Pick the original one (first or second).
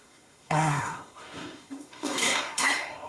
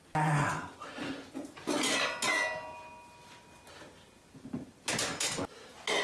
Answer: second